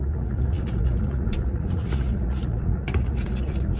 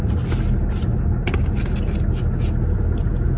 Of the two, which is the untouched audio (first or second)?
second